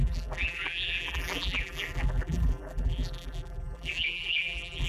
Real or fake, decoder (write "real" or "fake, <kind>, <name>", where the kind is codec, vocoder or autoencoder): fake, vocoder, BigVGAN v2